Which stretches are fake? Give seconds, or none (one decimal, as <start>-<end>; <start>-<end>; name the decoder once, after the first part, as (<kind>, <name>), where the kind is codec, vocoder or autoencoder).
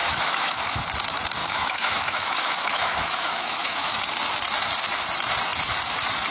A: 0.0-0.8 (autoencoder, DAC-VAE); 1.4-4.0